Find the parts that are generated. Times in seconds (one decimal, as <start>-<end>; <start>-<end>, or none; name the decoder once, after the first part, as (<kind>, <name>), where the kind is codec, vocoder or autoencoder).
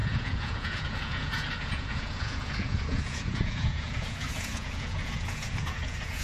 0.0-6.2 (vocoder, Vocos)